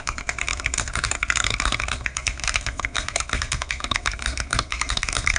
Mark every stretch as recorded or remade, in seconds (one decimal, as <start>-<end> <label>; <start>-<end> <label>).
0.0-5.4 remade